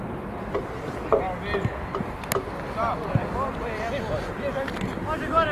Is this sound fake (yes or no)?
no